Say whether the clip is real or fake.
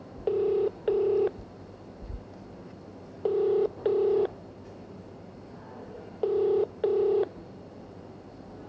real